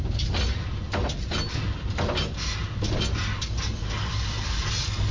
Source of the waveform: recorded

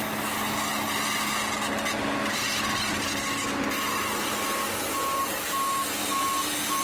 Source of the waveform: recorded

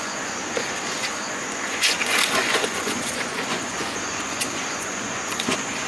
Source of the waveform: remade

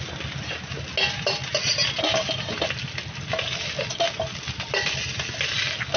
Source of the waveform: recorded